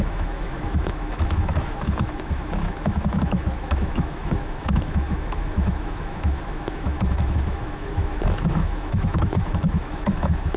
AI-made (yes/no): yes